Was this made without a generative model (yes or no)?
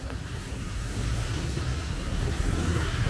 no